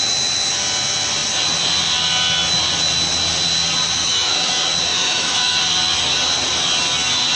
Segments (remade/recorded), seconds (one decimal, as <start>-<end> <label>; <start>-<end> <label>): 0.0-4.0 recorded; 4.0-4.5 remade; 4.5-4.9 recorded; 4.9-5.6 remade; 5.6-7.4 recorded